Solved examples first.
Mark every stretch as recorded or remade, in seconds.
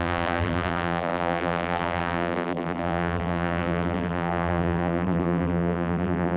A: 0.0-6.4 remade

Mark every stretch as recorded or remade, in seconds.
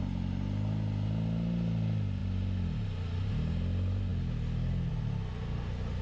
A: 0.0-6.0 recorded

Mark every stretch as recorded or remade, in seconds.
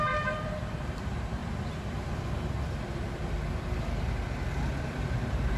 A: 0.0-1.4 remade; 1.4-4.8 recorded; 4.8-5.6 remade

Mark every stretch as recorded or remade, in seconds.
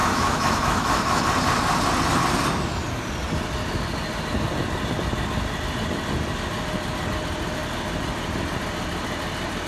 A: 0.0-1.2 remade; 1.2-9.7 recorded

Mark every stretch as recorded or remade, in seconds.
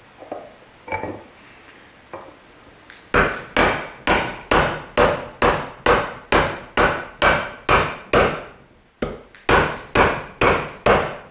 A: 0.0-11.3 recorded